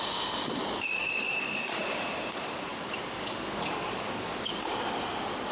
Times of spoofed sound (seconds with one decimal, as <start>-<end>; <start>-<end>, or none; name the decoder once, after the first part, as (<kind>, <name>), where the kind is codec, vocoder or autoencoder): 0.6-1.8 (codec, DAC); 2.7-4.7